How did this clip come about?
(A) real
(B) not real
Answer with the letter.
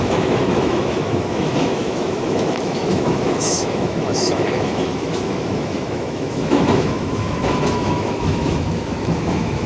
B